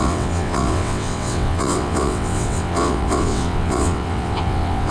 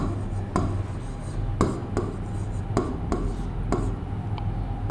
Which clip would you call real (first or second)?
second